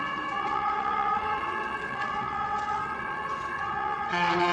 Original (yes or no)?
no